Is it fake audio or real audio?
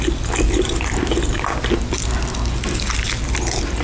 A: real